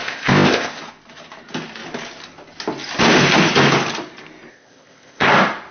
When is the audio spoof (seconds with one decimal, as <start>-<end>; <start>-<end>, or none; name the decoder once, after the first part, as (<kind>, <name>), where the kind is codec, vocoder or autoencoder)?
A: 0.0-0.8 (codec, ZipCodec); 4.5-5.3